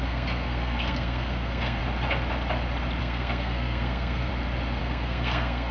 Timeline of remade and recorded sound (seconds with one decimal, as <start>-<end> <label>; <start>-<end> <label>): 0.0-1.8 remade; 1.8-3.0 recorded; 3.0-4.3 remade; 4.3-4.8 recorded; 4.8-5.7 remade